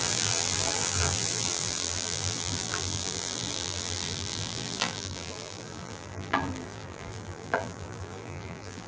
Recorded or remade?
remade